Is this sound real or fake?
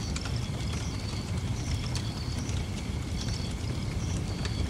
real